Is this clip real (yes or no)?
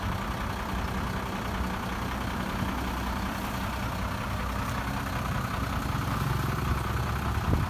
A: yes